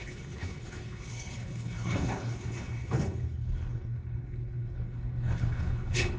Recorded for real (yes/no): no